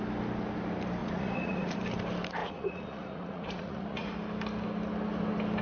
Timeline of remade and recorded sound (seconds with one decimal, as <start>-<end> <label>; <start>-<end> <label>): 0.0-1.0 recorded; 1.0-1.8 remade; 1.8-2.4 recorded; 2.4-4.1 remade; 4.1-5.6 recorded